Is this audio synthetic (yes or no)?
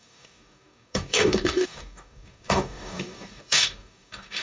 yes